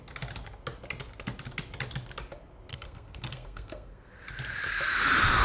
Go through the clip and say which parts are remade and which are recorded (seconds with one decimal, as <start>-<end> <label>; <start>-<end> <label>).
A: 0.0-2.7 recorded; 2.7-4.2 remade; 4.2-5.4 recorded